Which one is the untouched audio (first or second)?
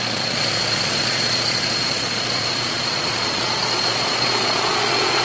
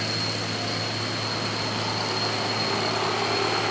second